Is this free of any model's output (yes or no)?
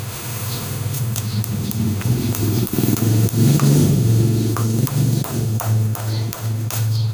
no